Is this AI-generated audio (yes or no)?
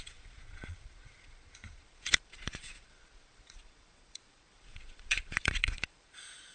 yes